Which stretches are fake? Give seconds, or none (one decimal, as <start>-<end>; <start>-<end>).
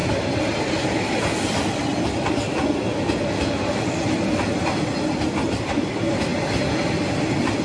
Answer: none